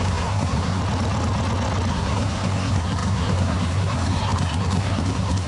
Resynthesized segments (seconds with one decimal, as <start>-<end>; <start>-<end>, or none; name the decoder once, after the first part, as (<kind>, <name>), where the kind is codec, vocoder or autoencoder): 0.0-0.8 (codec, SNAC); 1.9-5.5